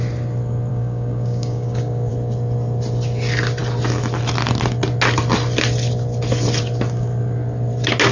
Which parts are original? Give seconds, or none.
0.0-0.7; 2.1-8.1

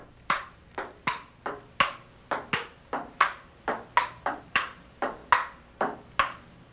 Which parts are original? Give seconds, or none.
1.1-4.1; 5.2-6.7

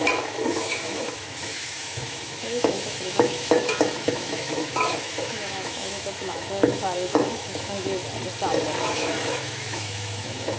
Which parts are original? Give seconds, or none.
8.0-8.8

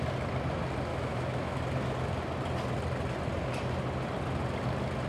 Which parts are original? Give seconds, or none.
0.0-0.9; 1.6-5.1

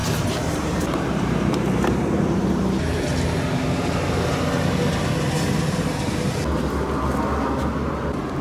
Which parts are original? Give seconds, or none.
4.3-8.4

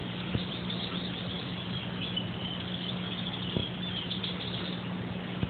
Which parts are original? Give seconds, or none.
0.5-2.5; 3.1-5.5